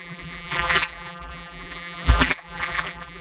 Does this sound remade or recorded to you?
remade